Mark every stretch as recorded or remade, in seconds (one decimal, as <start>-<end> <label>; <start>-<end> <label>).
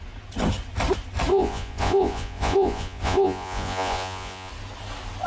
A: 0.0-1.3 recorded; 1.3-4.5 remade; 4.5-5.3 recorded